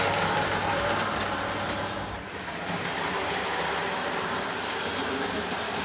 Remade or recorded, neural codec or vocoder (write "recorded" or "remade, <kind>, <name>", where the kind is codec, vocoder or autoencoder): recorded